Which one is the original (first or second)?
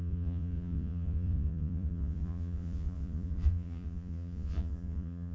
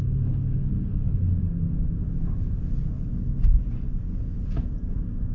second